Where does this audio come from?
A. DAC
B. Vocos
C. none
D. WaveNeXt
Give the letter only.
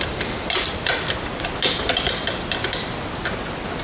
C